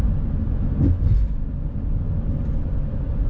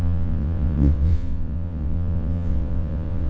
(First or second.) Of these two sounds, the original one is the first